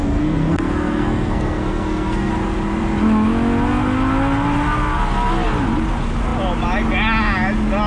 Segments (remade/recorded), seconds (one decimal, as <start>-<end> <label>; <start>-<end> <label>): 0.0-2.3 remade; 2.3-7.9 recorded